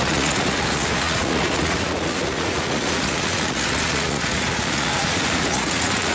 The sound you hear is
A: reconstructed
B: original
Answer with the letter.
A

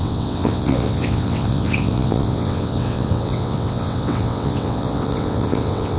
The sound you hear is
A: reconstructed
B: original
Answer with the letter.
A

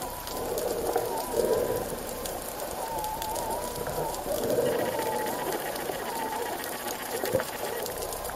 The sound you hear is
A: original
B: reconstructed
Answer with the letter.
B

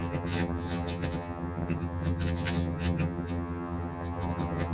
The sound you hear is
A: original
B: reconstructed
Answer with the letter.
B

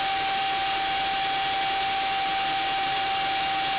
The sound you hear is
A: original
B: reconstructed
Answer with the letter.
A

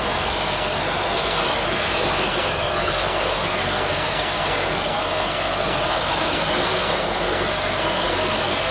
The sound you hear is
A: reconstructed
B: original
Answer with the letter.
A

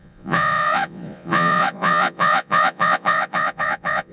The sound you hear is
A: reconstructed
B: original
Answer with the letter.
A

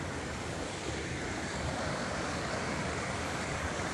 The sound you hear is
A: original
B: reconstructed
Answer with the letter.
B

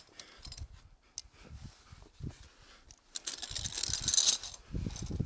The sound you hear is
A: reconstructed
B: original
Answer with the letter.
B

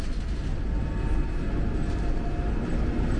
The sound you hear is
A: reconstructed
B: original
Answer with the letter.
B